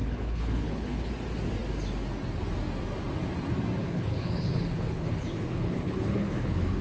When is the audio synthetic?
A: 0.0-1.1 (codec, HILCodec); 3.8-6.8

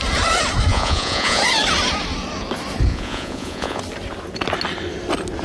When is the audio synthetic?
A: 0.7-1.4 (vocoder, Vocos); 2.9-3.8

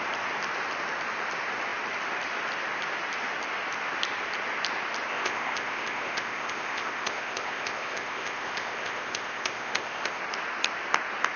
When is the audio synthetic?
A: 5.1-10.2 (codec, ZipCodec)

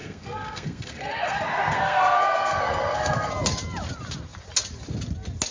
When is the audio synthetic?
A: 0.0-3.3 (codec, SNAC)

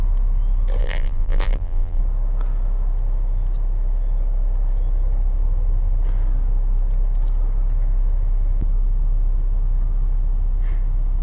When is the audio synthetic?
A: 0.8-2.0 (vocoder, BigVGAN v2)

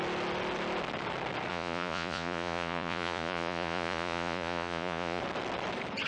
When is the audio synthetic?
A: 1.5-5.2 (vocoder, Vocos)

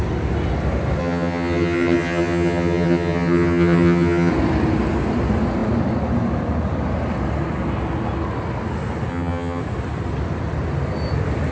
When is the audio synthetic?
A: 1.0-4.3 (vocoder, HiFi-GAN); 9.1-9.6

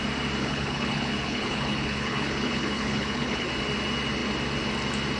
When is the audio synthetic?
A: 0.4-3.5 (codec, HILCodec)